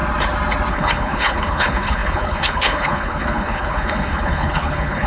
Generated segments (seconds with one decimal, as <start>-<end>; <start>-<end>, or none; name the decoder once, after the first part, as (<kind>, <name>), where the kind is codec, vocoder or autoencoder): 0.7-5.1 (codec, HILCodec)